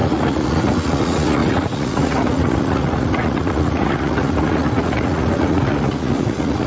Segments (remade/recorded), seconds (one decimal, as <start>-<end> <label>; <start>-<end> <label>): 0.0-6.7 remade